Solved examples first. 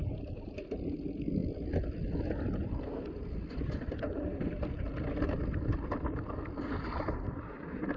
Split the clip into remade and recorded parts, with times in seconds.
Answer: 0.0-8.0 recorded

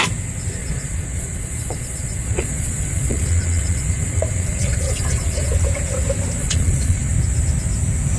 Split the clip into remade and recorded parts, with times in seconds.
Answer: 0.0-0.6 recorded; 0.6-5.5 remade; 5.5-6.4 recorded; 6.4-7.1 remade; 7.1-8.2 recorded